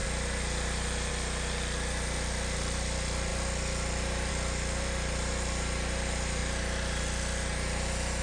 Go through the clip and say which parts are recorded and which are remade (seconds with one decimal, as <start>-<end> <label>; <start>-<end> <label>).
0.0-8.2 recorded